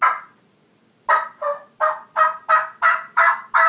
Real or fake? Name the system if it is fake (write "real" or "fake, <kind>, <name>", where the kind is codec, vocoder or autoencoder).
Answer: real